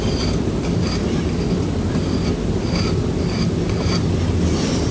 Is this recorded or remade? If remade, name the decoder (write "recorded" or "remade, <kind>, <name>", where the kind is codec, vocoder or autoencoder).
recorded